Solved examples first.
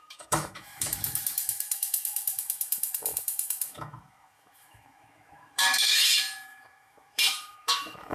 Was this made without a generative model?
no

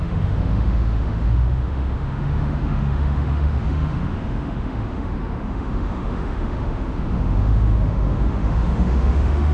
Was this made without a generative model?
no